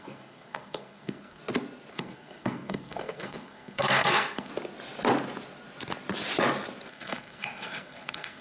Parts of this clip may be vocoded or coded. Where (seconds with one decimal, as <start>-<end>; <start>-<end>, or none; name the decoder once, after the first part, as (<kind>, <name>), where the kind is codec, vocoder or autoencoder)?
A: 0.0-1.4 (codec, SNAC); 1.9-4.5; 6.9-8.4